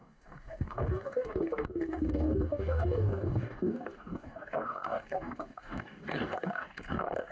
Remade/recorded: remade